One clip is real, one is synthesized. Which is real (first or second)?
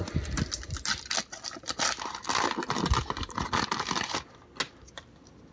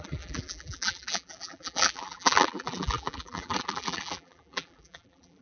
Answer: first